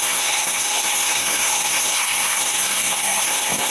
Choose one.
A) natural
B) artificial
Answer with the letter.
B